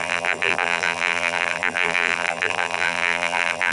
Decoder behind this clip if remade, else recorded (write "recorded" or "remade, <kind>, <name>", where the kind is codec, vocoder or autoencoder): remade, vocoder, BigVGAN v2